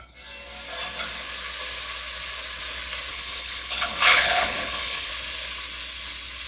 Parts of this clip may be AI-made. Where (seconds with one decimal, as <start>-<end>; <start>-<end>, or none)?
3.1-5.1

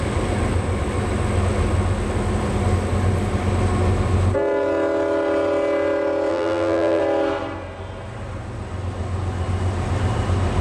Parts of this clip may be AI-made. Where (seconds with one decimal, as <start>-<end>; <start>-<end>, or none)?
6.3-7.0

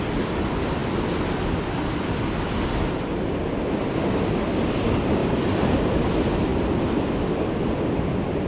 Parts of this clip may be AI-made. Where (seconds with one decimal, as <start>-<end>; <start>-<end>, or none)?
5.2-5.8

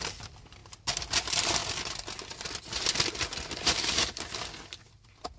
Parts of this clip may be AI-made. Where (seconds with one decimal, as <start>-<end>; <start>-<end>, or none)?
0.0-0.6; 1.2-1.6; 4.8-5.4

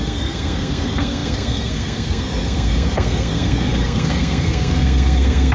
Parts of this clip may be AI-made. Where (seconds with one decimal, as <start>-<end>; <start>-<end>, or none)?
0.0-5.5

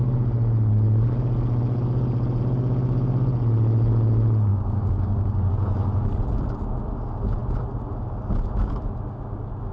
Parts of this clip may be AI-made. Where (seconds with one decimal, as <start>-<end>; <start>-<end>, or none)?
4.5-5.5

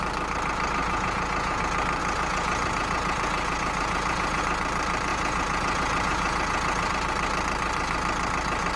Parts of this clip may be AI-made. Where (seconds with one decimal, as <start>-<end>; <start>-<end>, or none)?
0.8-1.6; 2.0-4.4; 5.1-6.9

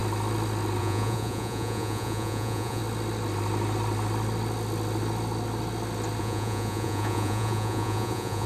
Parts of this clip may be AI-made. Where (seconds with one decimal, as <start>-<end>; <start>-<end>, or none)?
0.8-2.8; 6.2-8.5